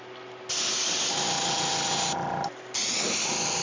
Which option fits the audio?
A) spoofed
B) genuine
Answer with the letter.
B